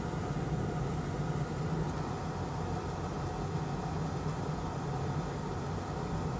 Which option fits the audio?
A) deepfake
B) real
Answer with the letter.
B